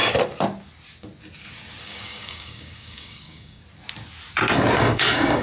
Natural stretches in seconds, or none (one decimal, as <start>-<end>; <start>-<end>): 0.0-1.8; 3.6-4.8